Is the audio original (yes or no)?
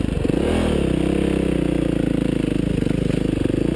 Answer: yes